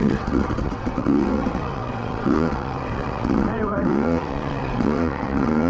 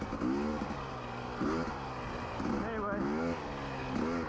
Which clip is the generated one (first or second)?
first